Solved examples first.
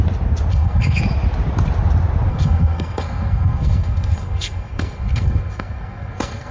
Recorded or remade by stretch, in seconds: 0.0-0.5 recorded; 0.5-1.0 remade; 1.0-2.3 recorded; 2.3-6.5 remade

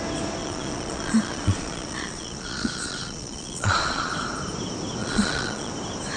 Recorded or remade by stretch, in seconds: 0.0-0.4 recorded; 0.4-4.1 remade; 4.1-5.0 recorded; 5.0-5.7 remade; 5.7-6.2 recorded

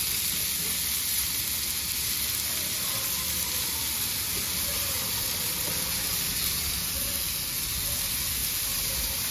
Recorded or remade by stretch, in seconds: 0.0-8.4 recorded; 8.4-9.3 remade

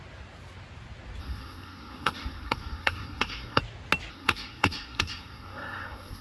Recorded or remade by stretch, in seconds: 0.0-1.2 recorded; 1.2-3.6 remade; 3.6-4.1 recorded; 4.1-6.2 remade

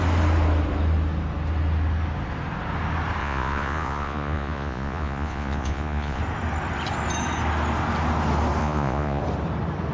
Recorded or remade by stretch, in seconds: 0.0-3.2 recorded; 3.2-6.2 remade; 6.2-8.6 recorded; 8.6-9.2 remade; 9.2-9.9 recorded